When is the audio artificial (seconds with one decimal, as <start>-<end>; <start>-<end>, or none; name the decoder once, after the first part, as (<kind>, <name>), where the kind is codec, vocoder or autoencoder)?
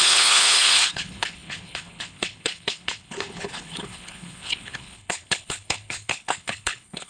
0.0-7.1 (codec, HILCodec)